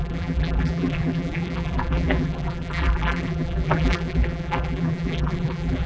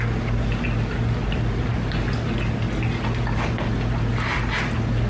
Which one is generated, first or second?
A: first